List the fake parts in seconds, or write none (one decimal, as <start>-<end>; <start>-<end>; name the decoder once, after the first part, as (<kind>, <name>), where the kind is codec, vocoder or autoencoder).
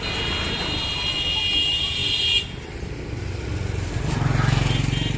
none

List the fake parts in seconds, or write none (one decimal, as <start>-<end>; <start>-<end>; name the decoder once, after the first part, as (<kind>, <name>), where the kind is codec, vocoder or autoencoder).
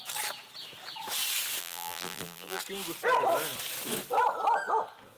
1.6-2.6 (vocoder, BigVGAN v2)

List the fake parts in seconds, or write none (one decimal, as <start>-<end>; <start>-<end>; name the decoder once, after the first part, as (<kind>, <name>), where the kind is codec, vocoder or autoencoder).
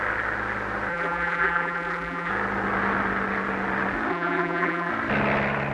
0.9-2.3 (vocoder, BigVGAN v2); 4.1-4.9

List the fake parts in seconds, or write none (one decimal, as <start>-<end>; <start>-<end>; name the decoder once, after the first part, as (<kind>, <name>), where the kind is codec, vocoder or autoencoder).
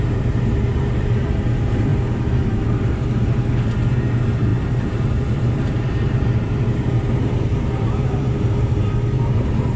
0.0-9.8 (vocoder, BigVGAN v2)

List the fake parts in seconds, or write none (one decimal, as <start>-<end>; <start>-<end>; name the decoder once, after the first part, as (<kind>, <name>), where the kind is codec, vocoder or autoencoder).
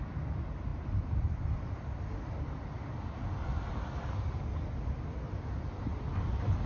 0.7-4.4 (vocoder, BigVGAN v2); 5.9-6.7